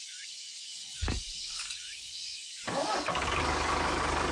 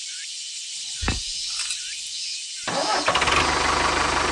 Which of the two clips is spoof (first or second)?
first